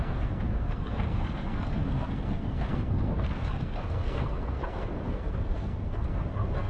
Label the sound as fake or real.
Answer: fake